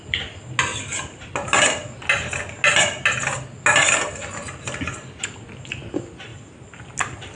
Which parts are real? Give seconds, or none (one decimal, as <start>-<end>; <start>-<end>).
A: 0.0-7.3